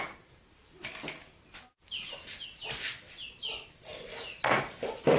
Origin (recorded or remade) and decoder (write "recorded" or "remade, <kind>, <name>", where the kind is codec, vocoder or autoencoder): recorded